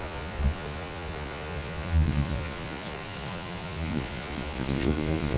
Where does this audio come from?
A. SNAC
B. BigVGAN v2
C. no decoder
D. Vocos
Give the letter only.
D